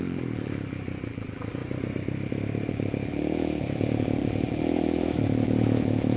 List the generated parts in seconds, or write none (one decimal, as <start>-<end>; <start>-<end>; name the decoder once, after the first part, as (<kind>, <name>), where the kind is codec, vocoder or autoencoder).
0.0-1.6 (vocoder, BigVGAN v2); 2.7-6.2